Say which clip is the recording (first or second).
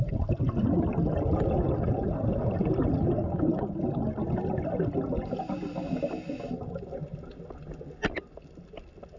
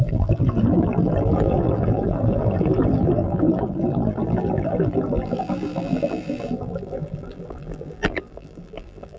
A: first